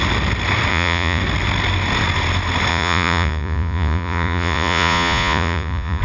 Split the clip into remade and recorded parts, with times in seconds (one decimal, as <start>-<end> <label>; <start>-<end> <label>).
0.0-0.7 recorded; 0.7-1.2 remade; 1.2-2.7 recorded; 2.7-6.0 remade